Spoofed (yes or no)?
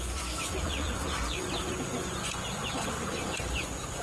yes